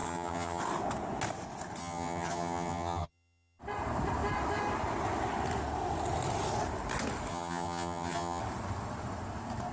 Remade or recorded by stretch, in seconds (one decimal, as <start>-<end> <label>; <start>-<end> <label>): 0.0-0.6 remade; 0.6-1.8 recorded; 1.8-3.6 remade; 3.6-7.3 recorded; 7.3-8.4 remade; 8.4-9.7 recorded

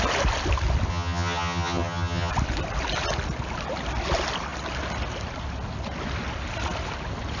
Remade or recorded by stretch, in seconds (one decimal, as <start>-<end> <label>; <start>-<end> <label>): 0.0-0.9 recorded; 0.9-2.3 remade; 2.3-7.4 recorded

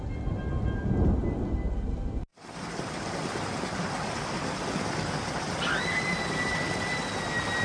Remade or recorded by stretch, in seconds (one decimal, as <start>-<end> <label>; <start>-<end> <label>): 0.0-7.6 recorded

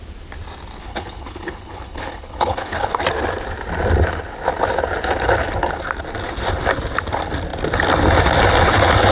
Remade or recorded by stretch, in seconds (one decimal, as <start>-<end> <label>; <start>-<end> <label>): 0.0-0.8 recorded; 0.8-3.0 remade; 3.0-9.1 recorded